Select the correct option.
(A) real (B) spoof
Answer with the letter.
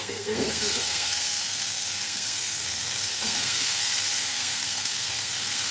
B